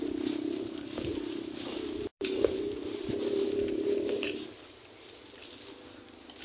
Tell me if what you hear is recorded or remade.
recorded